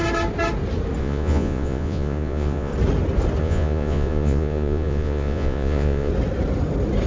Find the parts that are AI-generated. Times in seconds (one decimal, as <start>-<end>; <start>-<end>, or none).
1.0-2.7; 3.4-6.1